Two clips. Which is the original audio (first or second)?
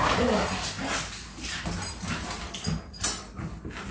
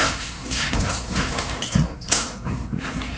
first